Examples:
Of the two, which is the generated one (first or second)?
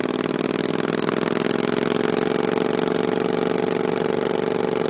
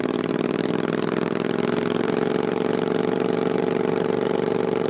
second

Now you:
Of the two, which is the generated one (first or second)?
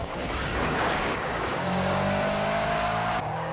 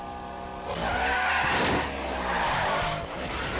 first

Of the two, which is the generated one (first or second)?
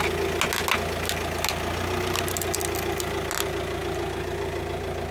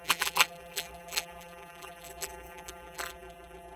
second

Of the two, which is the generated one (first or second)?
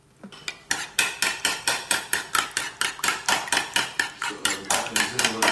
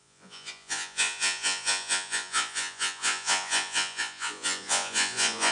second